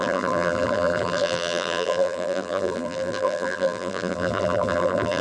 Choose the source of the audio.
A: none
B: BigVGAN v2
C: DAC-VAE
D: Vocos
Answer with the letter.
B